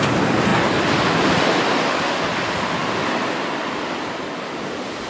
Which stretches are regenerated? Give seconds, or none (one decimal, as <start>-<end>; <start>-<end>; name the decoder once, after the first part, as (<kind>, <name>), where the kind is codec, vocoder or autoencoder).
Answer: none